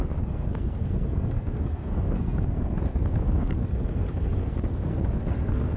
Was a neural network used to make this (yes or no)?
yes